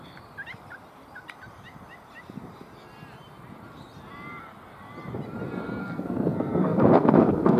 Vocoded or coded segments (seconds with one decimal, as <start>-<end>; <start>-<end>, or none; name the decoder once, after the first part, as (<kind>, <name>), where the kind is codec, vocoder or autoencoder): 5.8-7.6 (codec, SNAC)